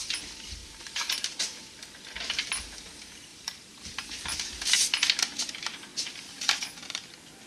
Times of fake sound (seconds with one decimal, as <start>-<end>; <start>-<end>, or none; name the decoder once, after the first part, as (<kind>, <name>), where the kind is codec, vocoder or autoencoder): 0.6-1.9 (vocoder, BigVGAN v2); 3.3-4.5; 5.9-6.6